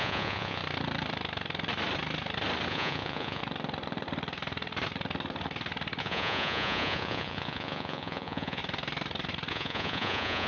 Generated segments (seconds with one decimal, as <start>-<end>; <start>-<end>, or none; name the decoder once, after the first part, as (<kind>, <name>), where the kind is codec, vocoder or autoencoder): 0.0-0.6 (vocoder, Vocos); 2.7-3.4; 6.0-8.6; 9.5-10.5